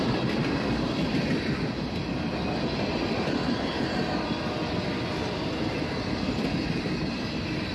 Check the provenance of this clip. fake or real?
real